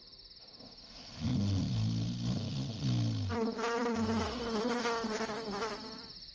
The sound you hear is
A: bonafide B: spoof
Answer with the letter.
A